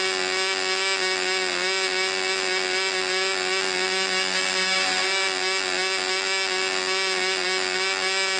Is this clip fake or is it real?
real